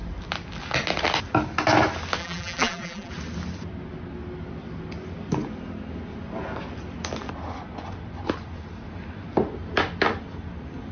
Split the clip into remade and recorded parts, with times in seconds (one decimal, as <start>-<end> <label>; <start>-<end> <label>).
0.0-2.2 recorded; 2.2-3.1 remade; 3.1-10.9 recorded